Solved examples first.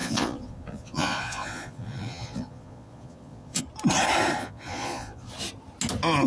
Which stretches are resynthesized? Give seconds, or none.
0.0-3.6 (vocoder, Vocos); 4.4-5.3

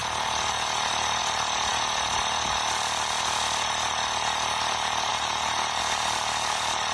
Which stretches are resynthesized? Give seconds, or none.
5.1-5.8 (vocoder, BigVGAN v2)

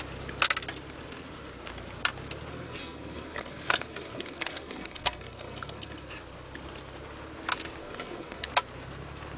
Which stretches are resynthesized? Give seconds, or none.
2.5-6.1 (codec, SNAC); 7.8-8.5

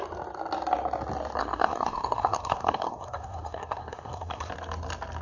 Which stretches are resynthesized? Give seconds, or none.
1.4-4.5 (codec, SNAC)

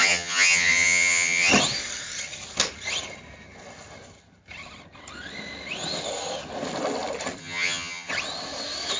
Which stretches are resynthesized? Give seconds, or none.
0.0-1.5 (vocoder, HiFi-GAN); 7.4-8.1

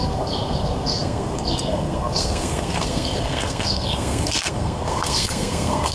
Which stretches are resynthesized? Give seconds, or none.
0.0-5.9 (codec, SNAC)

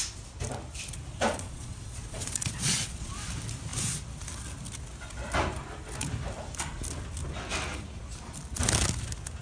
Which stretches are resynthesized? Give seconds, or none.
1.3-3.1 (vocoder, Vocos)